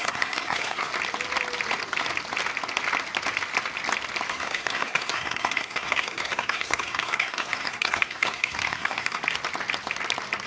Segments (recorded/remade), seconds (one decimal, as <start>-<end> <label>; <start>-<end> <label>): 0.0-0.9 remade; 0.9-4.3 recorded; 4.3-9.2 remade; 9.2-10.5 recorded